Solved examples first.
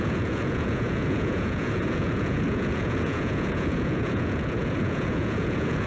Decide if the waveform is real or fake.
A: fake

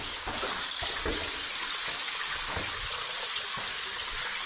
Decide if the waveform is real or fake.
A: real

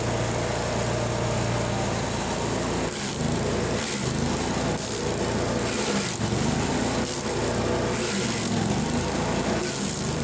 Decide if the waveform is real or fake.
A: real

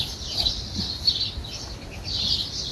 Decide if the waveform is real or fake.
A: fake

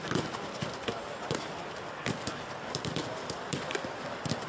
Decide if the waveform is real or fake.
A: real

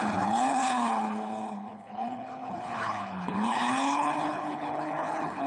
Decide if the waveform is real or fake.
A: fake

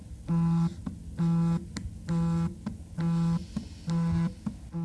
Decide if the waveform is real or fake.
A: real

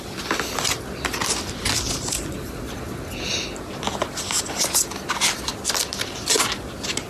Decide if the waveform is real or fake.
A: real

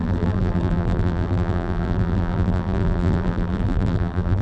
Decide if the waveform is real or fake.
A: fake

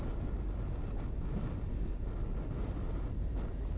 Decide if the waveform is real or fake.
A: real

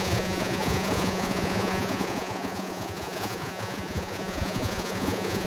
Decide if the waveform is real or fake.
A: fake